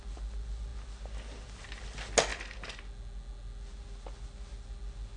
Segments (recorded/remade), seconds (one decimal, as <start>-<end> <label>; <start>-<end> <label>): 0.0-5.2 recorded